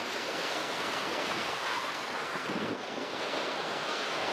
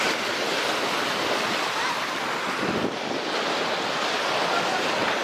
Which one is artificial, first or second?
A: first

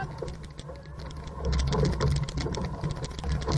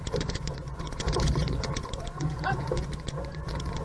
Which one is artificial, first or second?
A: second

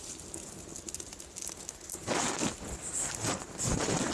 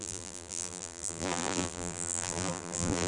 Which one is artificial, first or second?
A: second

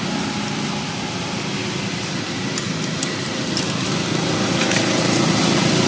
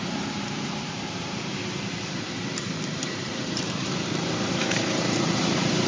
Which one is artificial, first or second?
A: second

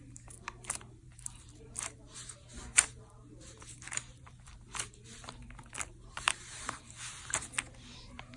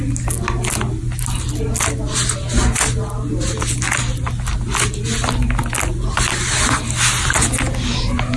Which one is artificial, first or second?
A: first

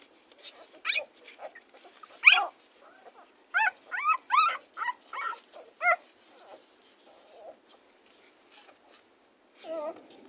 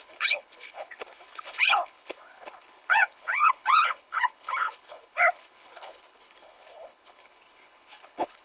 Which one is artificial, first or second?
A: second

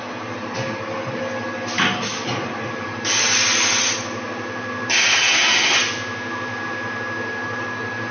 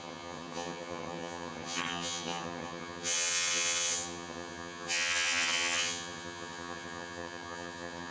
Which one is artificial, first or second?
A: second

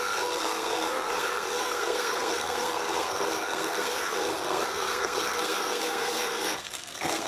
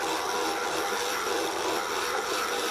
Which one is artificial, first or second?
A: first